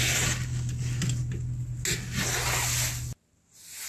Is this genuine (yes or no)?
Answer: yes